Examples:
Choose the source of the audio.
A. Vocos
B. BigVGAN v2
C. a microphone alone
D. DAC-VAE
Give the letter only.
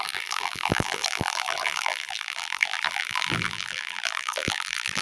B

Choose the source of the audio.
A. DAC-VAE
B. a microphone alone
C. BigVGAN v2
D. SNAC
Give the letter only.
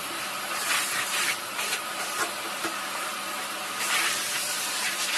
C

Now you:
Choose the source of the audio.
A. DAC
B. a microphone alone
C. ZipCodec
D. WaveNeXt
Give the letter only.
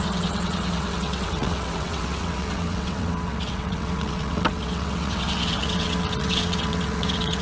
D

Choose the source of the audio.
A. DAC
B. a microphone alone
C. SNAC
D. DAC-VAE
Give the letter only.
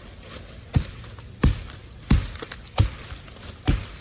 B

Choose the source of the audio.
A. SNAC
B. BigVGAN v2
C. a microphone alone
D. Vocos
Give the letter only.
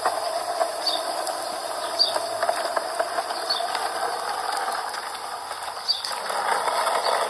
C